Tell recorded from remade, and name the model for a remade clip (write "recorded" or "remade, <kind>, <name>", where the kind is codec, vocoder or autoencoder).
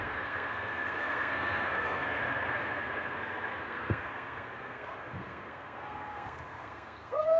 remade, codec, SNAC